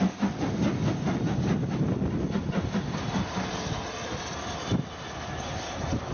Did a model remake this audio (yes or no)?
no